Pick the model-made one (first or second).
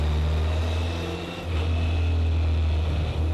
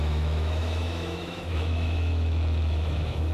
second